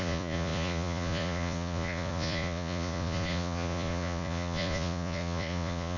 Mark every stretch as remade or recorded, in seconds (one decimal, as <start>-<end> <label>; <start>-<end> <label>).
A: 0.0-6.0 remade